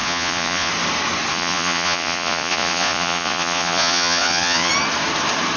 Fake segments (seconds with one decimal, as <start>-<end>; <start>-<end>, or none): 0.0-0.7; 1.3-4.7